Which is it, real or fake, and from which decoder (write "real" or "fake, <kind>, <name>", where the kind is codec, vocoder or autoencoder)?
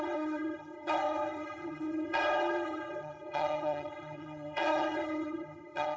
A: fake, vocoder, HiFi-GAN